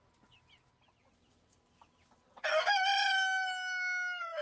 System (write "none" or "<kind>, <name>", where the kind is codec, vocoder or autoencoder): none